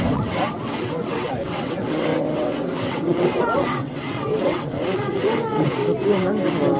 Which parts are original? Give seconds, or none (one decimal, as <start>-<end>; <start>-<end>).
5.8-6.8